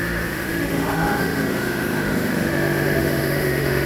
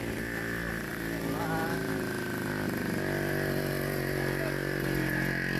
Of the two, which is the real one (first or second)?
second